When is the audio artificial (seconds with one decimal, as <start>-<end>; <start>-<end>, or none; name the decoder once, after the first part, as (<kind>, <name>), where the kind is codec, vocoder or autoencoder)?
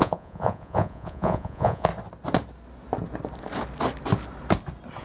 0.0-1.9 (vocoder, Vocos)